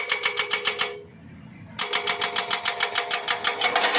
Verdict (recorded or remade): recorded